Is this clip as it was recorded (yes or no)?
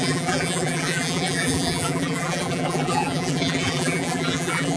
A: no